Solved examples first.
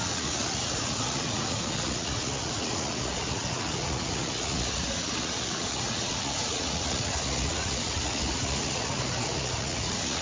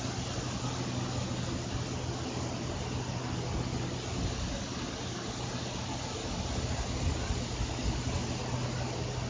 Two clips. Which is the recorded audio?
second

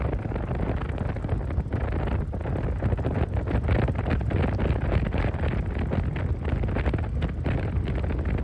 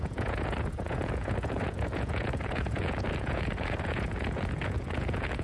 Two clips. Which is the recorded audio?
first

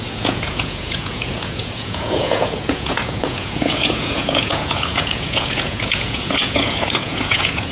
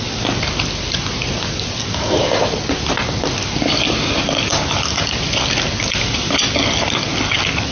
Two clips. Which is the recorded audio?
second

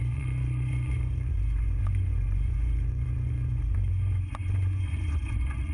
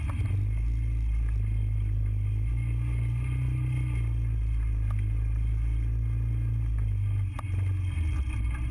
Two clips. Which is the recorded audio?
second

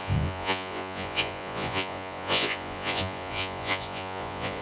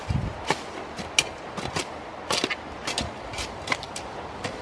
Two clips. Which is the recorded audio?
second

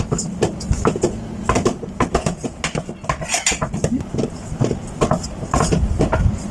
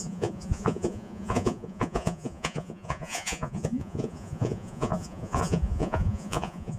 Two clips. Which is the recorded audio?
first